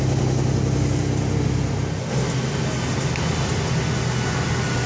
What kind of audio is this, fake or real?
real